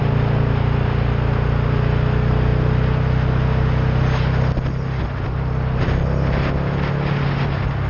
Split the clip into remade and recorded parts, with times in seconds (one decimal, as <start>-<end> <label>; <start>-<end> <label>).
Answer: 0.0-7.9 recorded